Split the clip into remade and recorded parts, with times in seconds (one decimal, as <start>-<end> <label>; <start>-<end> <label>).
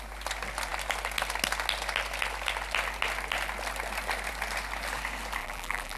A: 0.0-5.4 recorded; 5.4-6.0 remade